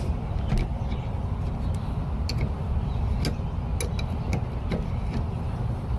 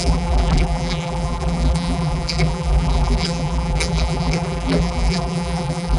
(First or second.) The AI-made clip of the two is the second